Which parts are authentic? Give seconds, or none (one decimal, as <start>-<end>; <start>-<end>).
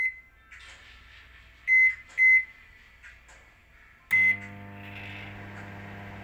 0.0-6.2